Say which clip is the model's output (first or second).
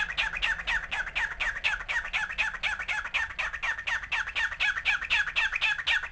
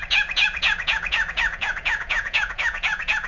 second